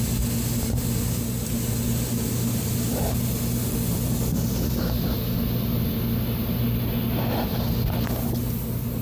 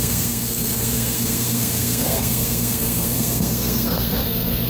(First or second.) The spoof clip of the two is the second